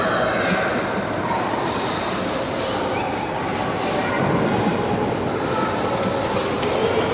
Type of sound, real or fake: real